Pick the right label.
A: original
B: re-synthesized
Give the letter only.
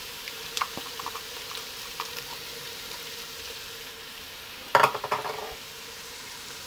B